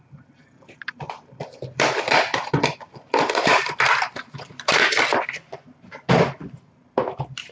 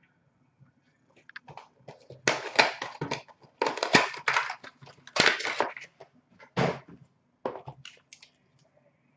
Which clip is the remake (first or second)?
first